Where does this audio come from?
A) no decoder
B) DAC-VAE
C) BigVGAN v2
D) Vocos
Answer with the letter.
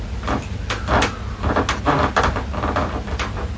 A